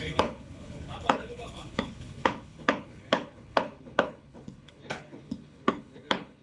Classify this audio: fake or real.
fake